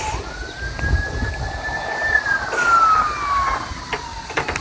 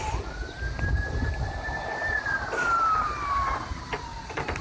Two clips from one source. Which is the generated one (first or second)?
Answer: second